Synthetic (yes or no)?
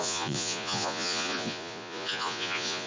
yes